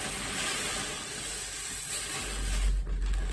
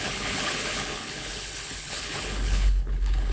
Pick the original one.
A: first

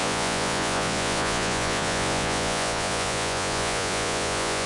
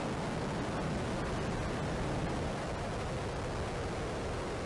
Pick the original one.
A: second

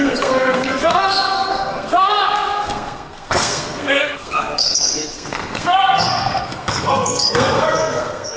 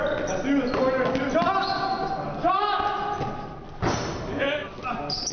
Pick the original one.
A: second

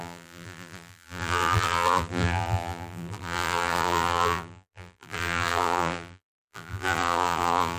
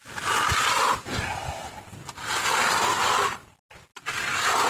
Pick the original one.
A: second